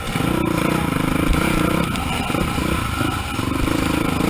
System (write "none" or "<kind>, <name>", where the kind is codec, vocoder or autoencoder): none